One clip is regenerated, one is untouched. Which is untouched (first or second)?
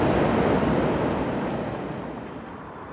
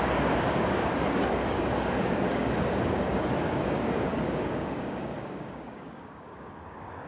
first